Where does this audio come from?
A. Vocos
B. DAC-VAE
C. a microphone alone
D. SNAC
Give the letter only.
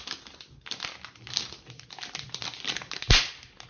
C